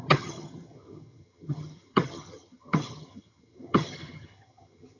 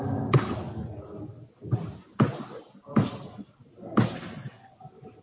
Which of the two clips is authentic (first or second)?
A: second